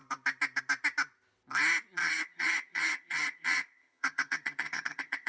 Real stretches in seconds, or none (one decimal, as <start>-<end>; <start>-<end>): 0.0-2.0